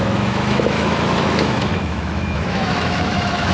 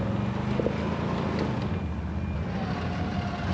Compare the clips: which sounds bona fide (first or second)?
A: second